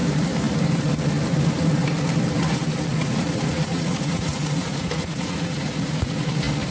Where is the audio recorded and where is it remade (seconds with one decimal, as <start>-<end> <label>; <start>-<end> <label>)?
0.0-2.9 recorded; 2.9-6.3 remade; 6.3-6.7 recorded